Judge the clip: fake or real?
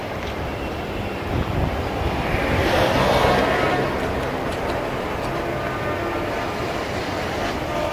real